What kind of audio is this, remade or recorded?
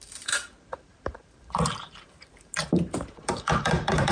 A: remade